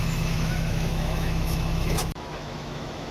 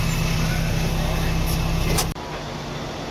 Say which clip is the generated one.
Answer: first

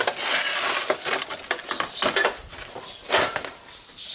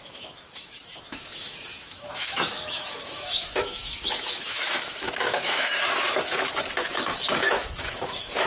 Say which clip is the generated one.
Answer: second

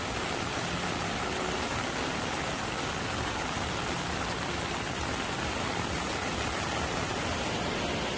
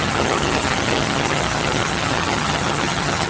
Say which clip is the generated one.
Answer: second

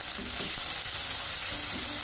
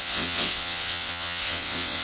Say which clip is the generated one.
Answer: second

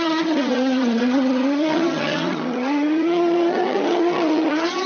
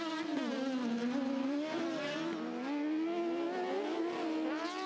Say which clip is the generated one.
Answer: first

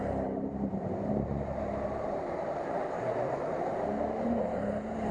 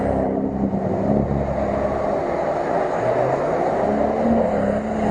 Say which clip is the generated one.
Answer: first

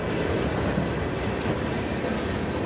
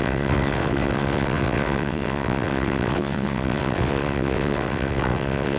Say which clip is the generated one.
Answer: second